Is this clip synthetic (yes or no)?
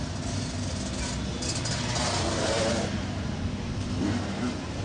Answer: no